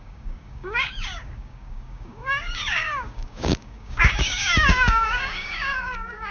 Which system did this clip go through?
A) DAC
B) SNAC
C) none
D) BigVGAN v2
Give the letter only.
A